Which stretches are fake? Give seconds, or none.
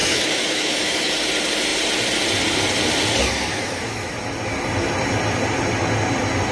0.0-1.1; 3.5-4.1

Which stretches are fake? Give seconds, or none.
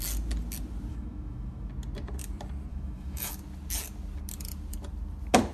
0.9-1.7; 2.7-3.3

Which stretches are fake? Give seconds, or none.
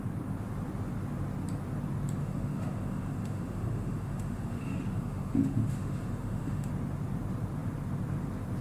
2.2-6.7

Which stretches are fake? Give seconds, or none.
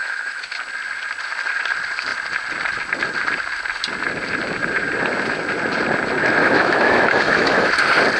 0.0-0.5; 6.4-7.7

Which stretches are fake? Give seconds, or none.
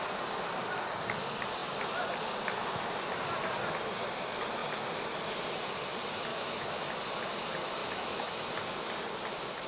6.3-6.9; 7.8-8.5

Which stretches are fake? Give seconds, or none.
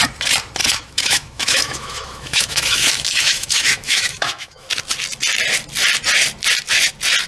0.6-4.7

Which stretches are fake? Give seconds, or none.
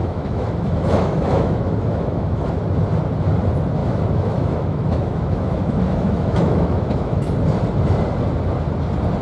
0.0-2.5; 3.8-7.3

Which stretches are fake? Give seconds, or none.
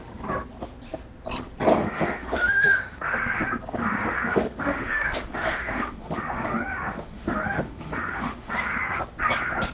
1.7-3.4; 3.8-9.0